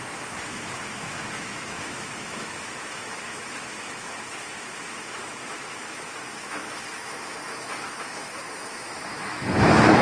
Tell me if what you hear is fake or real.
fake